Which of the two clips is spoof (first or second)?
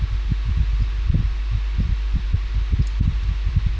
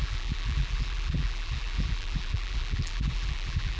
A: second